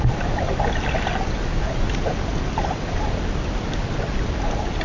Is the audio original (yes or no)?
yes